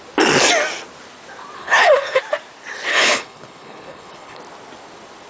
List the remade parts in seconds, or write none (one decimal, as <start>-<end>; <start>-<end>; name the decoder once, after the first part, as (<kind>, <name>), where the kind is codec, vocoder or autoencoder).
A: 1.6-2.2 (codec, HILCodec); 2.9-4.4